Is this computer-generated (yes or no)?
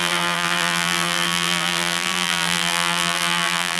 yes